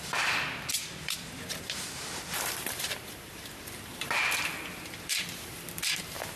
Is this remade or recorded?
remade